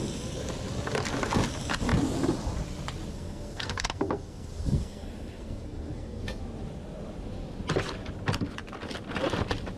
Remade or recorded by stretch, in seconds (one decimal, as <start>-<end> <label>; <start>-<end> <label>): 0.0-3.1 recorded; 3.1-6.4 remade; 6.4-9.8 recorded